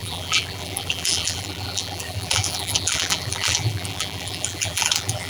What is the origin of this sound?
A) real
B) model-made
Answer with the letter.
B